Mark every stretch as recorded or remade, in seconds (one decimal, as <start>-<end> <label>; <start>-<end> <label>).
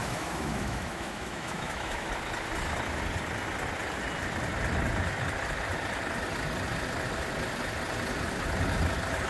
0.0-2.1 remade; 2.1-9.3 recorded